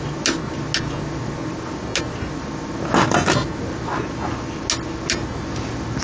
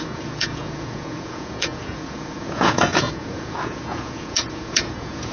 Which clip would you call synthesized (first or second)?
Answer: second